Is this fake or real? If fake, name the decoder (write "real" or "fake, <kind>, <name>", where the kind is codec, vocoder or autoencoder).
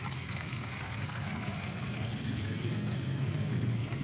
fake, codec, SNAC